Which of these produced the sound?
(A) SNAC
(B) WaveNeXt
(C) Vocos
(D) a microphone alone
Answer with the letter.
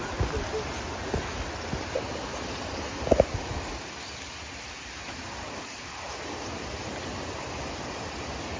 D